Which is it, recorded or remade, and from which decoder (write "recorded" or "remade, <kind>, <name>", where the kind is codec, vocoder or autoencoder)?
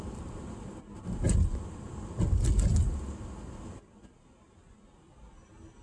recorded